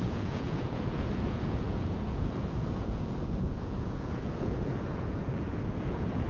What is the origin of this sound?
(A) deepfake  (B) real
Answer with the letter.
A